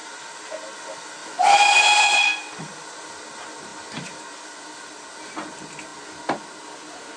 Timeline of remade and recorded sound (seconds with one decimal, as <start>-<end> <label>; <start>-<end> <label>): 0.0-0.5 remade; 0.5-3.7 recorded; 3.7-4.3 remade; 4.3-7.2 recorded